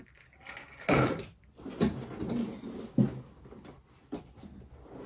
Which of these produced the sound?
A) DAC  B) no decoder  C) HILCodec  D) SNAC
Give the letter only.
B